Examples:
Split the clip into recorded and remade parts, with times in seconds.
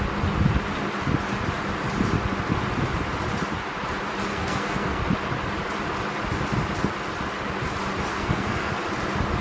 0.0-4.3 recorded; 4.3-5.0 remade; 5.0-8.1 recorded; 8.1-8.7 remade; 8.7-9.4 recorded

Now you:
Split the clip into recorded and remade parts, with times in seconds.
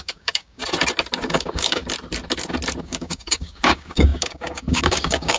0.0-0.6 remade; 0.6-1.3 recorded; 1.3-1.8 remade; 1.8-2.8 recorded; 2.8-5.4 remade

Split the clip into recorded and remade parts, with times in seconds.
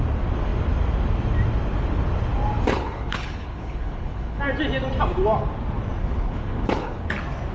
0.0-2.7 recorded; 2.7-4.4 remade; 4.4-6.0 recorded; 6.0-7.1 remade; 7.1-7.5 recorded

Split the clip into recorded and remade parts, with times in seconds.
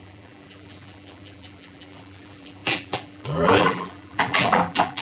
0.0-5.0 remade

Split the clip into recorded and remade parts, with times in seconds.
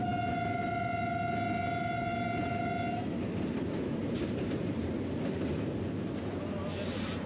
0.0-2.1 recorded; 2.1-2.6 remade; 2.6-4.0 recorded; 4.0-5.0 remade; 5.0-7.3 recorded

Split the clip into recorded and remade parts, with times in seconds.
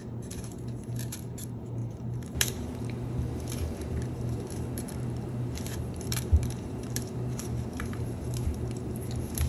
0.0-9.5 remade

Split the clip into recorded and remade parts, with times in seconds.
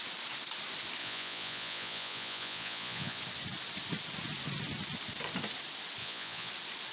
0.0-1.0 recorded; 1.0-3.2 remade; 3.2-6.0 recorded; 6.0-6.5 remade; 6.5-6.9 recorded